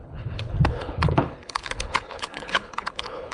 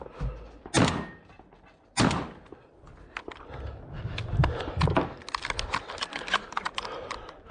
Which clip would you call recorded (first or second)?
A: second